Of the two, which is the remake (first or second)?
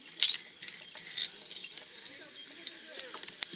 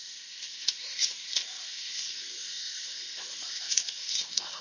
second